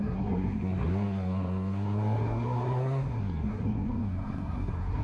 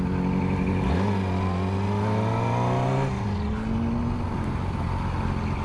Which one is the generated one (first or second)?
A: first